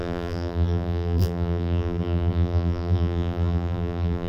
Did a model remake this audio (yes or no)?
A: yes